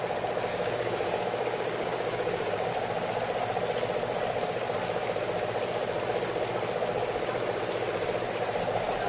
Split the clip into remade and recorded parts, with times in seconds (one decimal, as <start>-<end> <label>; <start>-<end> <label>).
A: 0.0-0.5 recorded; 0.5-2.7 remade; 2.7-9.1 recorded